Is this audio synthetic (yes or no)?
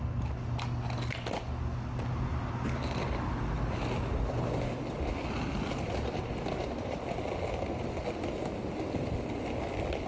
no